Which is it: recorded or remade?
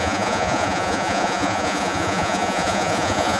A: remade